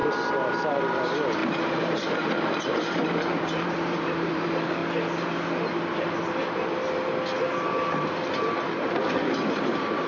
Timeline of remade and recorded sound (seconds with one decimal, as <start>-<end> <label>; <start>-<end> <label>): 0.0-0.7 recorded; 0.7-4.8 remade; 4.8-9.5 recorded; 9.5-10.1 remade